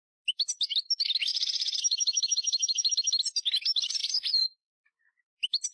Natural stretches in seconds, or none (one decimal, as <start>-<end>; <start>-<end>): 0.0-1.3; 2.9-4.0; 5.0-5.7